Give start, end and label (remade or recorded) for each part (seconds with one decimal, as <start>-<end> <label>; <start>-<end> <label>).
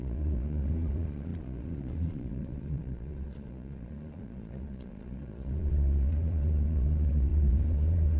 0.0-8.2 remade